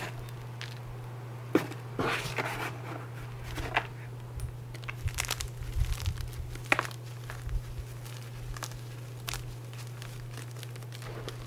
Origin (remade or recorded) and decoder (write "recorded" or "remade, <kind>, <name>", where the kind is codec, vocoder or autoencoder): recorded